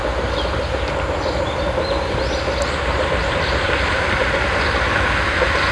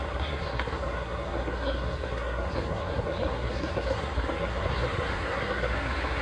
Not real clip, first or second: second